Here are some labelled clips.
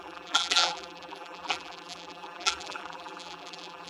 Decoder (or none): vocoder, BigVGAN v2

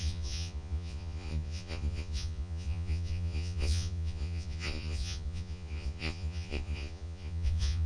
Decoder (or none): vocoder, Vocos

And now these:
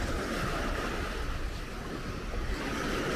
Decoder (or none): none